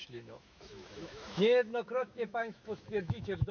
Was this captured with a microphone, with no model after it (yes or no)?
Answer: no